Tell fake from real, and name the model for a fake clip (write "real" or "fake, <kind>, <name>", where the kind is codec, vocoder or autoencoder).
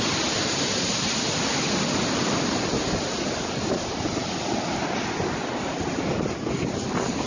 real